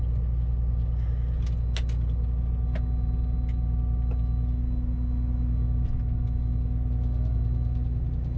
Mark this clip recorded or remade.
recorded